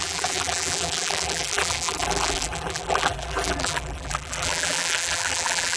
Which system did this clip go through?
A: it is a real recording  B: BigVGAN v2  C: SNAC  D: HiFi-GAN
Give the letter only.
B